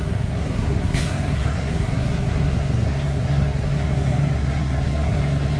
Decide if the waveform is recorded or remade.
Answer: remade